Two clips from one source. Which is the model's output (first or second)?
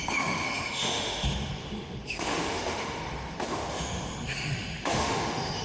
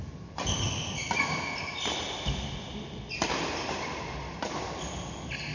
first